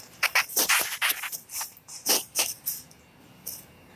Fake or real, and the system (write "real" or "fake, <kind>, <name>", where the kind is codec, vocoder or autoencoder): real